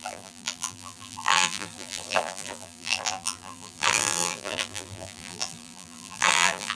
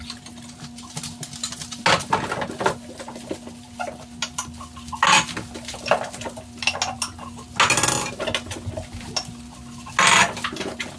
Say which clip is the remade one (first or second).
first